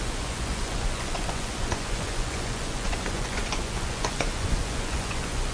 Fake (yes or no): yes